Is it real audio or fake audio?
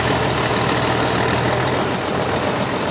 real